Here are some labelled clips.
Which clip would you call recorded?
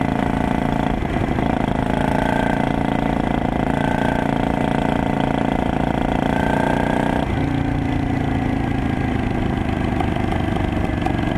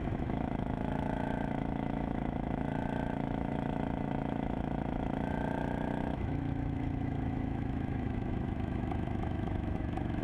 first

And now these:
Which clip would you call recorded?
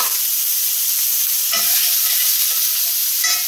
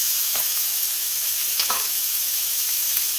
first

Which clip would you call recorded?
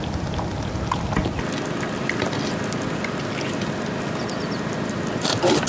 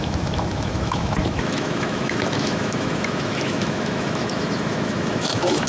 first